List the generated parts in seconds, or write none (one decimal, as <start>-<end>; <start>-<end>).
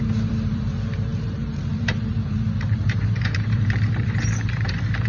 0.0-5.1